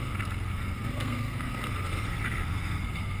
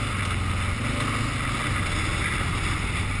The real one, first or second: second